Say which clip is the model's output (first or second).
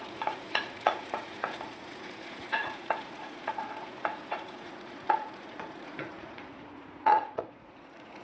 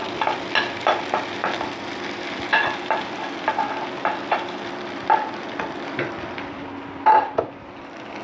first